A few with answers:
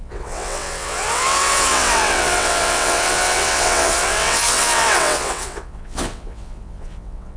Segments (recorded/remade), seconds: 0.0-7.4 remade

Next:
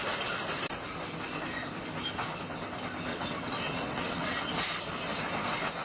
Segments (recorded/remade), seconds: 0.0-3.1 recorded; 3.1-4.5 remade; 4.5-5.8 recorded

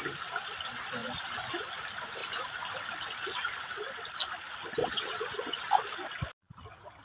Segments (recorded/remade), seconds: 0.0-4.8 recorded; 4.8-5.6 remade; 5.6-7.0 recorded